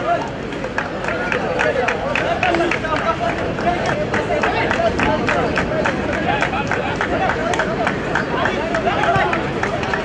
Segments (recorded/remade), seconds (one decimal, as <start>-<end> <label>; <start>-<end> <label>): 0.0-10.0 recorded